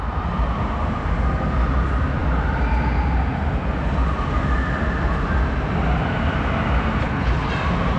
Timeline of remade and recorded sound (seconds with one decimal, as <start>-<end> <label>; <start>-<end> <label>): 0.0-7.0 recorded; 7.0-7.5 remade; 7.5-8.0 recorded